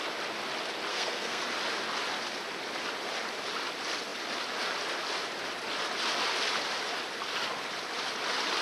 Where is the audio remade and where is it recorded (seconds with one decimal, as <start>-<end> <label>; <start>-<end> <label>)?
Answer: 0.0-0.9 recorded; 0.9-1.4 remade; 1.4-8.6 recorded